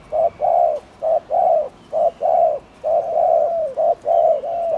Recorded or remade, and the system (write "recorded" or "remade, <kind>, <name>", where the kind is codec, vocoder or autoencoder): recorded